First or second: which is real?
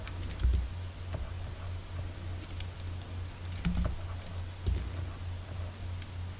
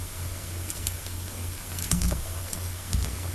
first